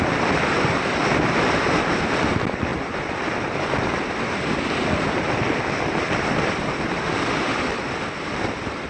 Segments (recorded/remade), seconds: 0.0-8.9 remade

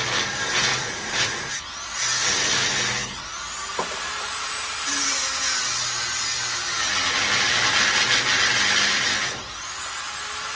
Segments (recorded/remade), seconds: 0.0-0.7 recorded; 0.7-1.6 remade; 1.6-10.5 recorded